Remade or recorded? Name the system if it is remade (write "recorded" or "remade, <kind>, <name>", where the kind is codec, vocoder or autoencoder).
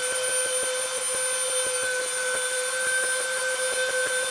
recorded